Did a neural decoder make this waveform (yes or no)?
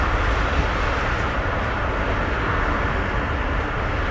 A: no